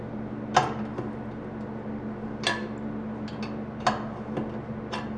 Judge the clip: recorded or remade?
recorded